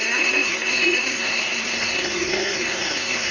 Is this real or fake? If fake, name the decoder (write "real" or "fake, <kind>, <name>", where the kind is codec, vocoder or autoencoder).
fake, codec, SNAC